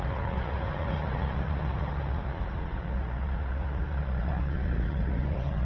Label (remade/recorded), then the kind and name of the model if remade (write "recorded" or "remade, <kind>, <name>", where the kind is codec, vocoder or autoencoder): remade, vocoder, Vocos